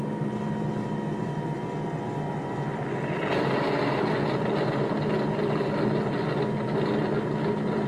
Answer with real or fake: real